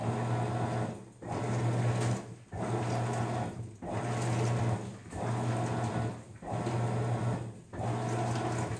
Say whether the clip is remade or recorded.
recorded